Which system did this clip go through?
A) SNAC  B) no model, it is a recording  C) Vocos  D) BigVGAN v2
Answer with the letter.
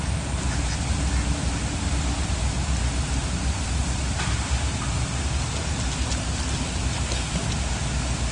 B